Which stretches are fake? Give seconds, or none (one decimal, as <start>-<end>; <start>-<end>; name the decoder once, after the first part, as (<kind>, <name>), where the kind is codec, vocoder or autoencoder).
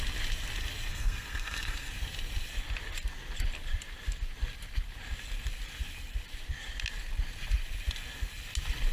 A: 0.9-1.9 (codec, SNAC)